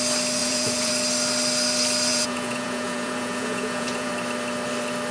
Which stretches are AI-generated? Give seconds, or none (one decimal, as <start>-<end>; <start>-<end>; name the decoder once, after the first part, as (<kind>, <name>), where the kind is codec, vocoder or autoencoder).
0.4-0.9 (vocoder, Vocos); 2.1-4.1